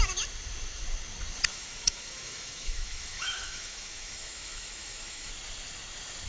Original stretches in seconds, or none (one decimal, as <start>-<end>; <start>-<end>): 0.0-1.5; 5.3-6.3